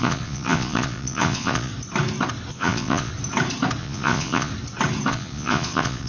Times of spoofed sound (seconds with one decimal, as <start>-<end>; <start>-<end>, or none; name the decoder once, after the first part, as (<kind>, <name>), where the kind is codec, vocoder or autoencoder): 0.0-1.7 (vocoder, Vocos); 2.5-3.1; 3.8-4.5; 5.1-6.1